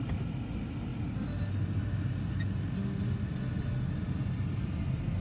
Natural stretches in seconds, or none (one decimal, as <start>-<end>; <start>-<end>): 0.0-5.2